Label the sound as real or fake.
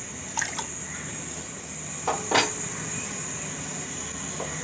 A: real